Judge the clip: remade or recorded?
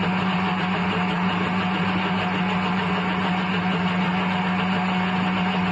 recorded